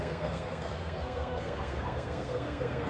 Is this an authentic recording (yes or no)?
no